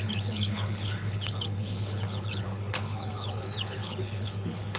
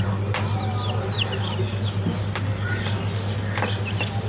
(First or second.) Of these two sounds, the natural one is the second